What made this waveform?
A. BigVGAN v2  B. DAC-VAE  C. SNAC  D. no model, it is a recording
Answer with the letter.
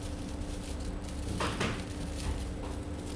D